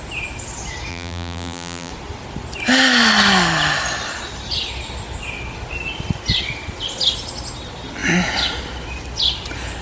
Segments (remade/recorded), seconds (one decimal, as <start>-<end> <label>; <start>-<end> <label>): 0.0-0.9 recorded; 0.9-1.9 remade; 1.9-9.8 recorded